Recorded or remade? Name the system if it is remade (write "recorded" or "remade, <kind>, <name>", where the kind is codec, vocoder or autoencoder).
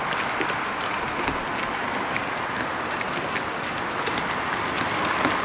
recorded